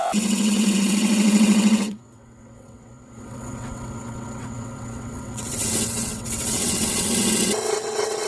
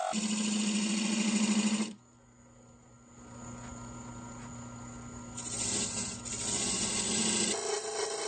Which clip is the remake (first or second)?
first